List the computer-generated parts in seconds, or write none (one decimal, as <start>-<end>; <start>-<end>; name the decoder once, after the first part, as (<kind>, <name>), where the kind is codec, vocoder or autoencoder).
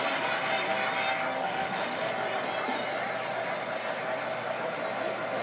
1.4-2.1 (autoencoder, DAC-VAE)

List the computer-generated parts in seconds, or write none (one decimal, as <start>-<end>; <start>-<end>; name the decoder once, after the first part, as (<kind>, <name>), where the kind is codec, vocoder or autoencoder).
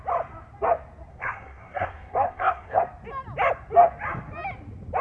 1.1-2.8 (codec, SNAC)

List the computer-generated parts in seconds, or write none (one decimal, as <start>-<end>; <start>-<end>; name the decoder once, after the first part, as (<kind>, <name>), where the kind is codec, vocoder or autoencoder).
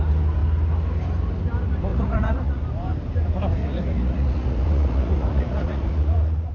1.9-2.6 (vocoder, Vocos); 3.6-6.5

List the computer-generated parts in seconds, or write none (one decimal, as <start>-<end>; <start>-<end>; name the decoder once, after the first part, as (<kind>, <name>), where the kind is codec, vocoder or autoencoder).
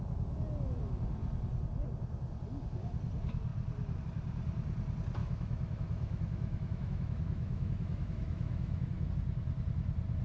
5.2-9.1 (autoencoder, DAC-VAE)